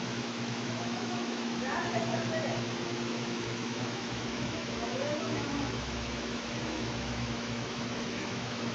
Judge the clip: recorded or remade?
remade